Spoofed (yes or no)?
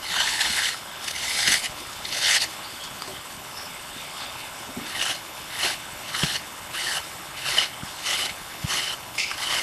yes